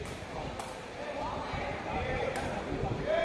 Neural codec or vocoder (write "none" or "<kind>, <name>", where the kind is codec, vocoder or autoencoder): vocoder, BigVGAN v2